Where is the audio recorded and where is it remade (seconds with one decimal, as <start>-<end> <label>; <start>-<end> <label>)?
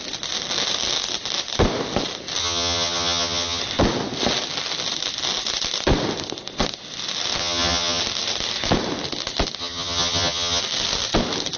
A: 0.0-2.4 recorded; 2.4-3.6 remade; 3.6-7.4 recorded; 7.4-8.0 remade; 8.0-9.6 recorded; 9.6-10.6 remade; 10.6-11.6 recorded